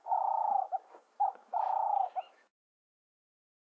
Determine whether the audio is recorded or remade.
remade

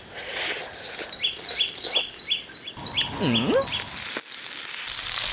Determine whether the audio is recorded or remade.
recorded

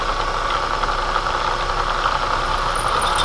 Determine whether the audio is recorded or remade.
recorded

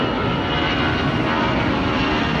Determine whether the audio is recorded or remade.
recorded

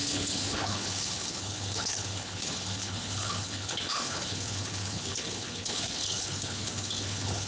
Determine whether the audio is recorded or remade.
remade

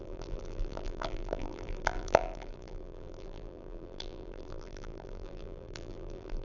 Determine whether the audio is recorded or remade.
remade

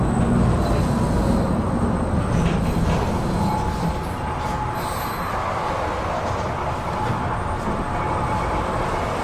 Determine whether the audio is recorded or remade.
recorded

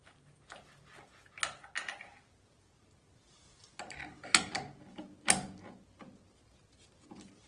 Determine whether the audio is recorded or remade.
recorded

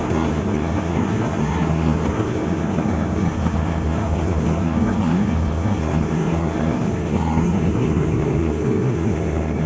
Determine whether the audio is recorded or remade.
remade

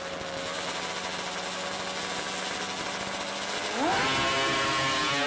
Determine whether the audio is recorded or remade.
recorded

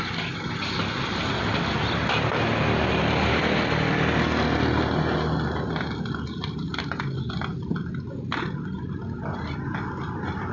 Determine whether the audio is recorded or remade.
recorded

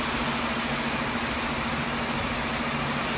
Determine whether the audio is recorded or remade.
recorded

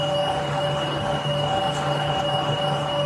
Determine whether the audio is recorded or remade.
remade